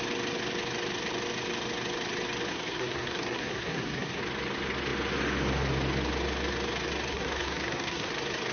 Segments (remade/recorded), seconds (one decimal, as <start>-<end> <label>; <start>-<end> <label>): 0.0-2.5 recorded; 2.5-4.2 remade; 4.2-7.1 recorded; 7.1-8.1 remade; 8.1-8.5 recorded